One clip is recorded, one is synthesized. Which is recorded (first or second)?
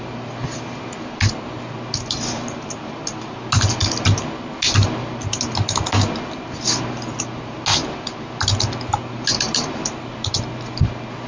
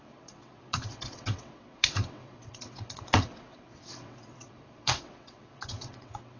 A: first